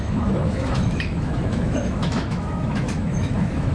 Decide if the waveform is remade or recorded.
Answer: remade